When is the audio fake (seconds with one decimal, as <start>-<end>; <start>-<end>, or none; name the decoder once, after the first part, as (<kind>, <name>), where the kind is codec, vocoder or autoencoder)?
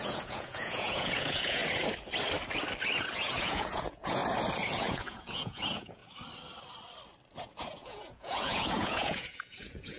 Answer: 0.0-1.6 (vocoder, Vocos); 3.0-4.2; 4.8-6.0; 7.4-10.0